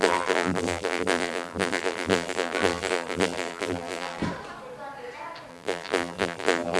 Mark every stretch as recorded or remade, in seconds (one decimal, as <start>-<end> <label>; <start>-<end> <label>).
0.0-4.2 remade; 4.2-5.5 recorded; 5.5-6.8 remade